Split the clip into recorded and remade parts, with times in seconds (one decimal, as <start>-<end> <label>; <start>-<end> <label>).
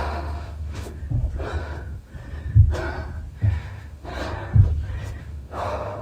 0.0-1.0 remade; 1.0-1.6 recorded; 1.6-2.1 remade; 2.1-3.3 recorded; 3.3-4.1 remade; 4.1-5.2 recorded; 5.2-6.0 remade